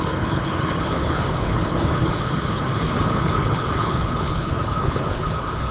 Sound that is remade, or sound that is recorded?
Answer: remade